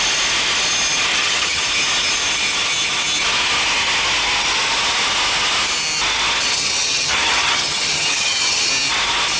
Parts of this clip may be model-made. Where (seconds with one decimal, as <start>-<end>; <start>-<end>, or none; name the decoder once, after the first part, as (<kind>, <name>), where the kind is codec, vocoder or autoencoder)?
1.1-1.6 (vocoder, HiFi-GAN); 6.5-8.7